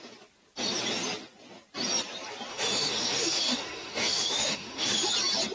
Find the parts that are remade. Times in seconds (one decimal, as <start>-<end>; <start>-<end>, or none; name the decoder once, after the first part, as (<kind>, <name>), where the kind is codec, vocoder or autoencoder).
2.5-5.1 (autoencoder, DAC-VAE)